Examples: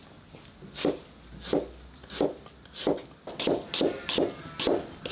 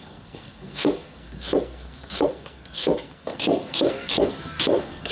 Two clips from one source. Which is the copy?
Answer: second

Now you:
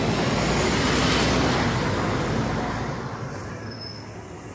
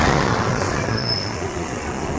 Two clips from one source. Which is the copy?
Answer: second